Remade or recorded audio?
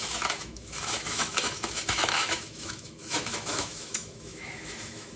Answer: remade